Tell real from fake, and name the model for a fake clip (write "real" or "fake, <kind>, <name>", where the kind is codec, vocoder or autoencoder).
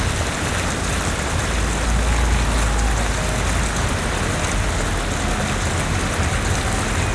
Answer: real